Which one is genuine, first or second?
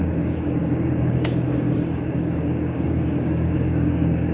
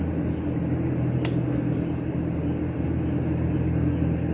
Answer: second